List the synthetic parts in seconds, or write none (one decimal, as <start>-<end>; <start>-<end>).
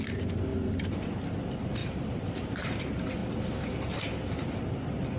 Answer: 0.5-1.1; 1.8-2.5; 3.2-4.4